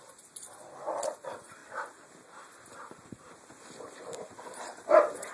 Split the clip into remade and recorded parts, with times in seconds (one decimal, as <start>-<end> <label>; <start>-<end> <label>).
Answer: 0.0-5.3 recorded